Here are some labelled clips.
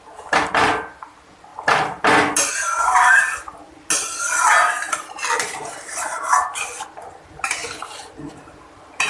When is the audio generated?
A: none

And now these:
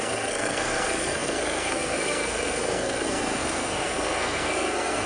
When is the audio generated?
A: 0.0-5.1 (codec, SNAC)

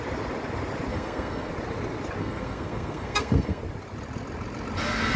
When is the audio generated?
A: 0.9-1.5 (codec, SNAC); 2.2-3.6

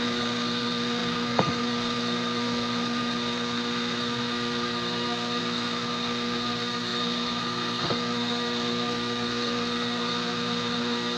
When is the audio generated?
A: 0.0-11.2 (codec, SNAC)

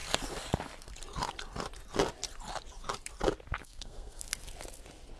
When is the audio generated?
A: 3.6-4.2 (codec, SNAC)

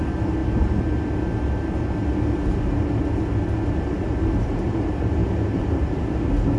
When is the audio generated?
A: none